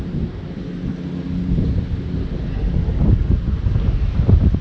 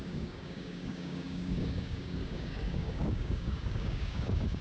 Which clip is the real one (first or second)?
first